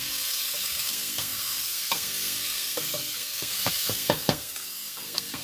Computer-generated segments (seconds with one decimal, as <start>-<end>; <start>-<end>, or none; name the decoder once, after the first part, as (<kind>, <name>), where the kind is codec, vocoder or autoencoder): 0.0-5.4 (codec, SNAC)